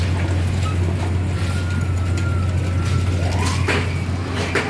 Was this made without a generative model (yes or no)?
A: yes